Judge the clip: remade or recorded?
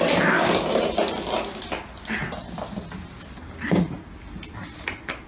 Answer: recorded